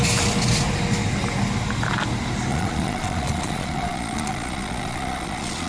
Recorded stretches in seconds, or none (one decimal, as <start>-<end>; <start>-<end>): 0.0-2.5